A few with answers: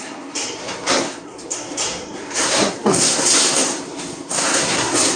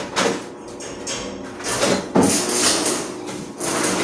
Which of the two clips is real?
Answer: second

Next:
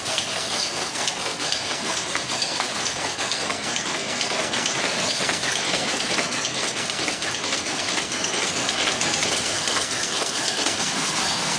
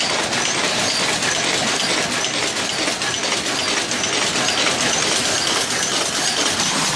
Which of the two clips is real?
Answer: second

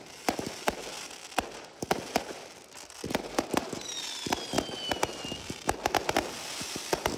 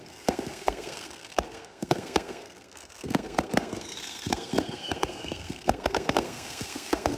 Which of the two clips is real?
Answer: first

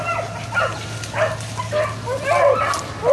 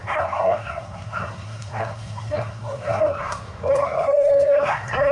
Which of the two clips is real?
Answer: first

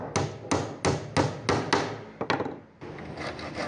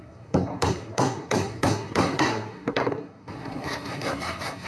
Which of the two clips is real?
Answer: first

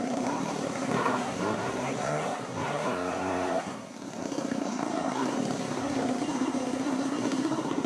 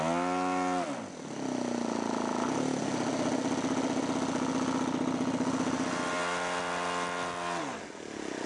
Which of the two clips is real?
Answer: second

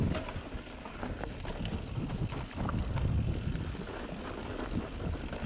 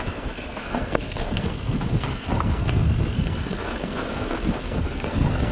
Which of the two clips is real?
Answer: first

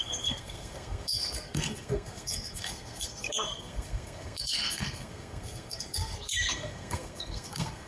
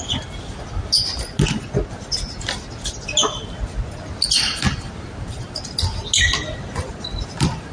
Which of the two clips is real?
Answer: second